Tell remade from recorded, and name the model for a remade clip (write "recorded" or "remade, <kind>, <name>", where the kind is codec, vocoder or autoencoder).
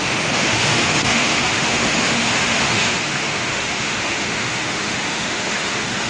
remade, autoencoder, DAC-VAE